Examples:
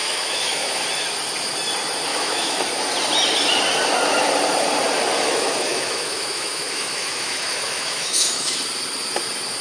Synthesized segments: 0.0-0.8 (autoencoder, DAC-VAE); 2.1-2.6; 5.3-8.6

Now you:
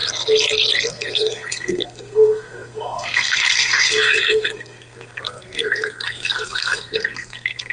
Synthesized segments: 0.9-7.7 (codec, SNAC)

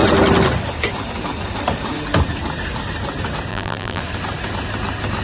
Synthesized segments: 3.5-4.0 (vocoder, BigVGAN v2)

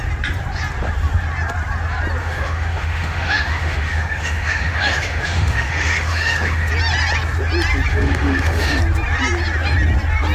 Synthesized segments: 2.2-6.7 (autoencoder, DAC-VAE); 7.9-8.8

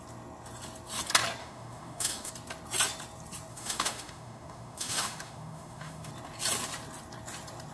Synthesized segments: 1.4-2.3 (autoencoder, DAC-VAE); 3.5-6.1

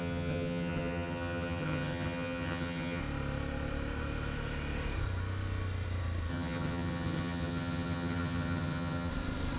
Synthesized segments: 0.0-3.0 (vocoder, HiFi-GAN); 6.3-9.1

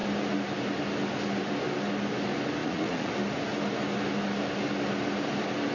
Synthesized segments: 2.6-3.1 (vocoder, Vocos)